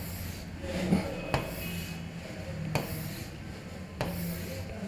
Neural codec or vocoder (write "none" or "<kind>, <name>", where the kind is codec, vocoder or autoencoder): none